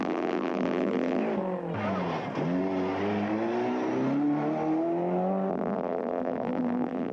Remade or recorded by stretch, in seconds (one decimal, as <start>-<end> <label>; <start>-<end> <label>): 0.0-1.2 remade; 1.2-5.5 recorded; 5.5-7.1 remade